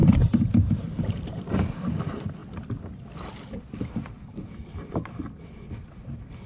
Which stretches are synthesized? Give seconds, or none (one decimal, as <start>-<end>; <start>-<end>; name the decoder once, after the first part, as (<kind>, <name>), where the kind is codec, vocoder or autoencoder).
0.0-1.7 (vocoder, BigVGAN v2)